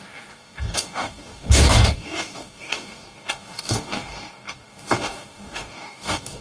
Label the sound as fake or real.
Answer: fake